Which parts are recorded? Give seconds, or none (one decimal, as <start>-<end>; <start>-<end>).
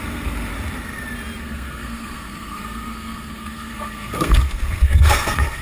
0.5-1.4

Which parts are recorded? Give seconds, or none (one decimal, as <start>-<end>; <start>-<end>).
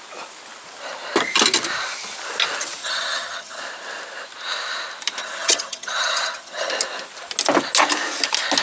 0.0-2.8; 3.6-5.2; 6.7-8.6